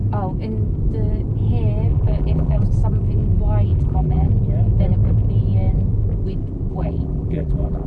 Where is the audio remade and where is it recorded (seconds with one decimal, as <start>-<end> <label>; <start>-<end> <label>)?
0.0-1.9 recorded; 1.9-2.6 remade; 2.6-3.7 recorded; 3.7-4.3 remade; 4.3-6.7 recorded; 6.7-7.9 remade